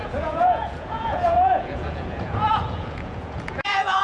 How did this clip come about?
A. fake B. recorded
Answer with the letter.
A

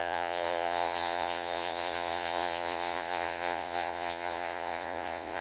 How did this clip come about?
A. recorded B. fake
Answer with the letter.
B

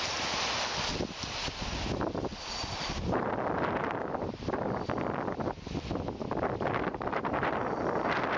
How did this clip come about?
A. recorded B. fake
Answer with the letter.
A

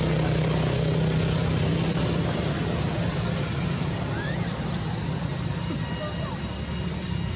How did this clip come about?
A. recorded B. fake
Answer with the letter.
A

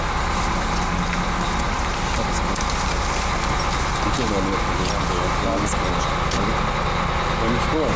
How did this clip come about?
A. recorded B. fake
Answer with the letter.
A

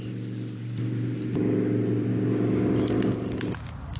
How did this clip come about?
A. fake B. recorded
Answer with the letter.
B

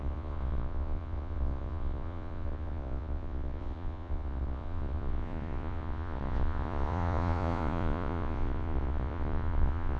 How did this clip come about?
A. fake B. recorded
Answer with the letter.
A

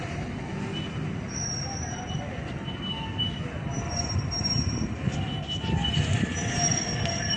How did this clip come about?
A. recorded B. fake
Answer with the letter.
A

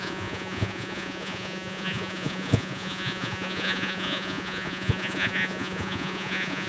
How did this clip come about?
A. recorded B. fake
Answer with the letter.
B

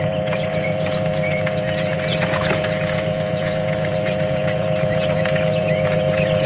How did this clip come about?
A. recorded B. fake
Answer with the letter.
B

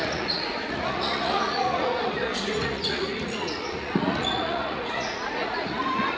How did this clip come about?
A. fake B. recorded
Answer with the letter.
A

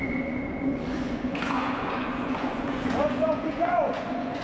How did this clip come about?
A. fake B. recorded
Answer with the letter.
A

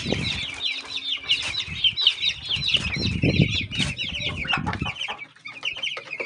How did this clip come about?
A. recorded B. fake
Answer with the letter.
A